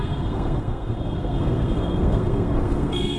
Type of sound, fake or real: fake